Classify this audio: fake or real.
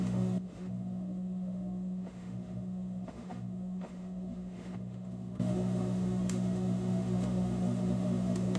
fake